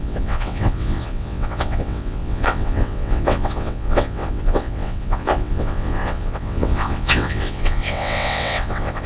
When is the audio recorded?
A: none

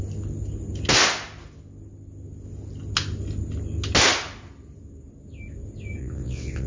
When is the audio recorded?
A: 0.0-6.0

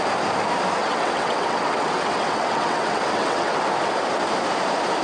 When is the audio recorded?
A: 0.0-0.8; 3.6-5.0

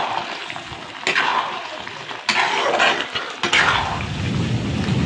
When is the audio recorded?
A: 0.0-5.1

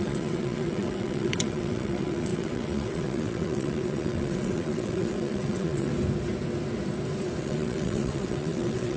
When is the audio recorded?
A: 5.9-7.4

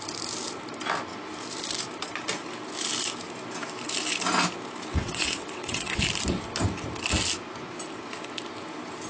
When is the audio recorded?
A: 0.0-4.9; 6.0-9.1

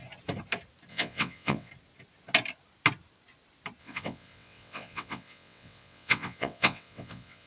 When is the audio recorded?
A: 0.0-0.9; 1.7-3.8

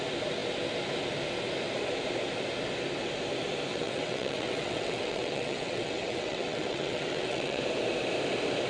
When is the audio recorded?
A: 0.0-3.7; 7.6-8.7